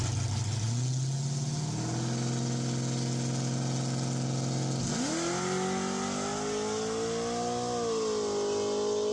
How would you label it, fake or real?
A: real